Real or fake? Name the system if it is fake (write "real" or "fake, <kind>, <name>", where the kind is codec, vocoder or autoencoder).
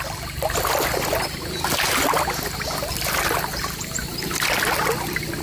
fake, vocoder, BigVGAN v2